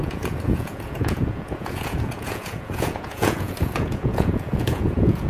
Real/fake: fake